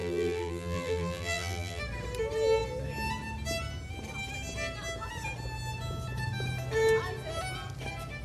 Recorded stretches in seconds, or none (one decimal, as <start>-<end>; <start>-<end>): 1.8-8.2